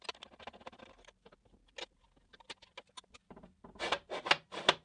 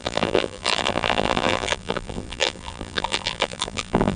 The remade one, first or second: second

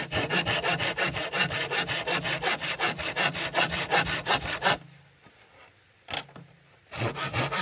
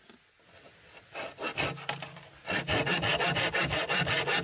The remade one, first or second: first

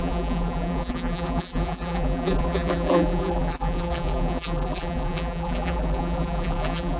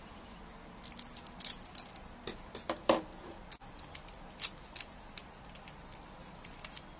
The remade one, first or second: first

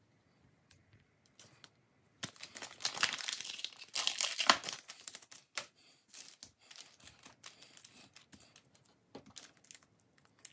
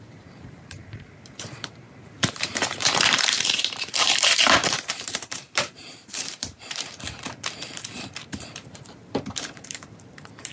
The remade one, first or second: second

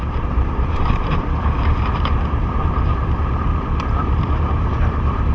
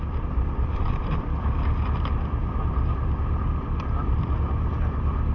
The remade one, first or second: first